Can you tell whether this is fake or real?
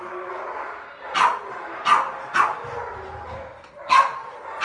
real